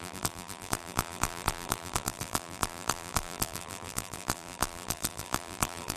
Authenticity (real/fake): fake